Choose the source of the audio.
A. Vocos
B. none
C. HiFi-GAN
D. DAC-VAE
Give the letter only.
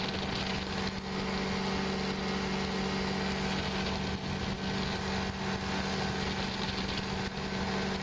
B